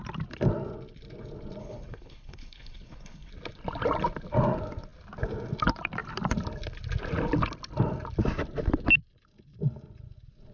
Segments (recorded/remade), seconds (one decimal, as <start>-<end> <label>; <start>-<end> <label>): 0.0-1.6 recorded; 1.6-3.3 remade; 3.3-10.5 recorded